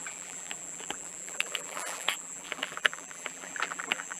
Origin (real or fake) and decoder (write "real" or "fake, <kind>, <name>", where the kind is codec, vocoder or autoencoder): fake, vocoder, BigVGAN v2